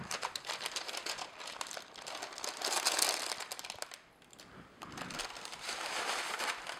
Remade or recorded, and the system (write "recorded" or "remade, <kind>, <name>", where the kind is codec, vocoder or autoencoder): recorded